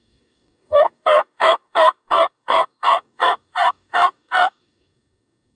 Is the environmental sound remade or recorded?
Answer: remade